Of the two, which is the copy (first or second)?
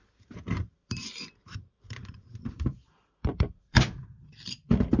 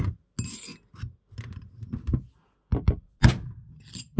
first